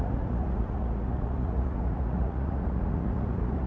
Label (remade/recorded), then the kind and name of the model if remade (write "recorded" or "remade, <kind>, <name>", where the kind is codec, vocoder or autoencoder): remade, vocoder, Vocos